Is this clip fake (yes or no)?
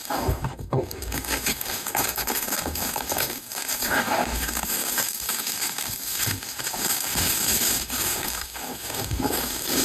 yes